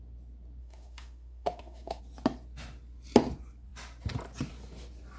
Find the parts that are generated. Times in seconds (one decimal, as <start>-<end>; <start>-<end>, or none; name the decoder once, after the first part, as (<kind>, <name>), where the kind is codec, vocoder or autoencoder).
0.6-2.0 (autoencoder, DAC-VAE)